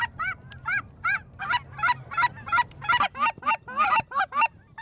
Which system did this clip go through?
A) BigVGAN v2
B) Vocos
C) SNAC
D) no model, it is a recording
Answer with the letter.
A